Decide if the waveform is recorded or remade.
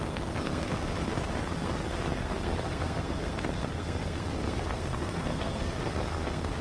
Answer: remade